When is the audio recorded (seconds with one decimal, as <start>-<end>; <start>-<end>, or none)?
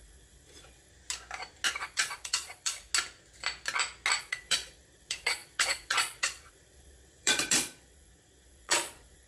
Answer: 0.9-1.7; 2.9-4.2